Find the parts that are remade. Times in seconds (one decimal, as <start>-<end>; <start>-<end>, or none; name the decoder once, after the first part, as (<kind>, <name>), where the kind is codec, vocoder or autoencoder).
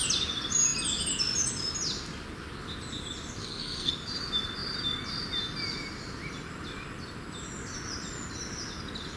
3.4-3.9 (codec, SNAC)